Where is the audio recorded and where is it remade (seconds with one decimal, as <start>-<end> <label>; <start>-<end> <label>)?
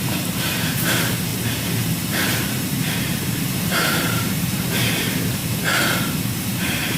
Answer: 0.0-1.3 remade; 1.3-2.0 recorded; 2.0-5.4 remade; 5.4-5.9 recorded; 5.9-7.0 remade